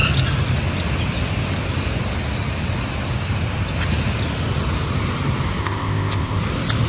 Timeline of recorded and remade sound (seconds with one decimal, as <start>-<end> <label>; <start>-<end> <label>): 0.0-5.6 recorded; 5.6-6.4 remade; 6.4-6.9 recorded